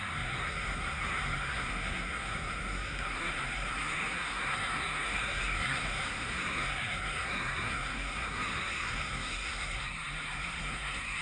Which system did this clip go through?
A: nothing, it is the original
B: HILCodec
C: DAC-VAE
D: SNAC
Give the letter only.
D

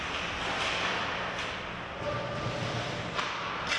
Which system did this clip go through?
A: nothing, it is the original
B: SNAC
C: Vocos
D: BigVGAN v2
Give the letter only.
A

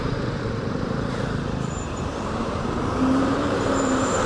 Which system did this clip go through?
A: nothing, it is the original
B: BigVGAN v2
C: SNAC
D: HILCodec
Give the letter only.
B